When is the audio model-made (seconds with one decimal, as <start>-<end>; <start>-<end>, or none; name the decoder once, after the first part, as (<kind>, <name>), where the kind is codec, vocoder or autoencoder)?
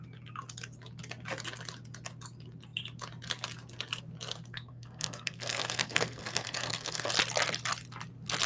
4.5-7.1 (codec, SNAC)